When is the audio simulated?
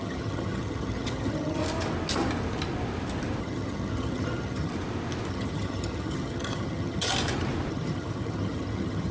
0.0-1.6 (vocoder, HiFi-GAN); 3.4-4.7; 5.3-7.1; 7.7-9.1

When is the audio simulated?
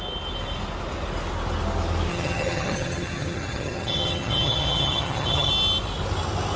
2.1-5.5 (vocoder, HiFi-GAN)